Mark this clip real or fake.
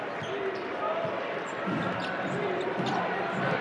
real